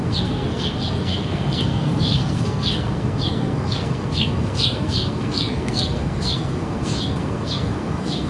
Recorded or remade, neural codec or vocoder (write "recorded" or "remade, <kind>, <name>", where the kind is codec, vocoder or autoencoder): remade, codec, SNAC